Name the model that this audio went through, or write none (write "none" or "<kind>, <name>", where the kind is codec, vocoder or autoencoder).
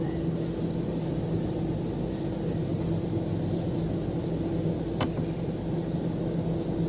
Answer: none